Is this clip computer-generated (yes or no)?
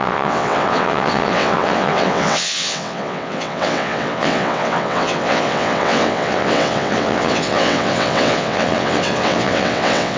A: yes